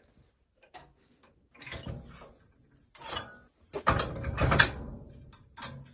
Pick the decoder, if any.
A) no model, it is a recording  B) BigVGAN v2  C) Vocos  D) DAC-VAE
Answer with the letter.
A